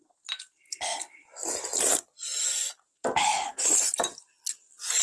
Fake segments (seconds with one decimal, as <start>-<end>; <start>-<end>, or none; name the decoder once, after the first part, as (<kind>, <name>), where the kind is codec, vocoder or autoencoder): none